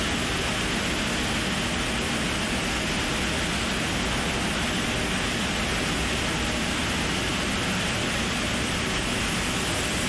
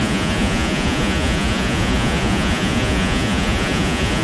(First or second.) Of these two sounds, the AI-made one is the second